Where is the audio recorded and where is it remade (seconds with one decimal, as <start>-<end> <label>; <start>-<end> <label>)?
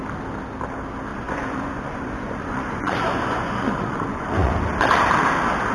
0.0-1.1 recorded; 1.1-4.5 remade; 4.5-5.7 recorded